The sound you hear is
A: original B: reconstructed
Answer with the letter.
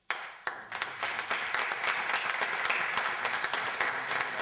A